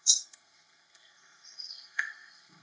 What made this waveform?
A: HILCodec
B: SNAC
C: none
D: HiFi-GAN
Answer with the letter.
B